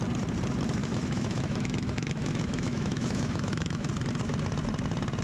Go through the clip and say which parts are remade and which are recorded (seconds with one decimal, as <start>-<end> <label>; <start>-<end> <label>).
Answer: 0.0-0.8 recorded; 0.8-3.9 remade; 3.9-5.2 recorded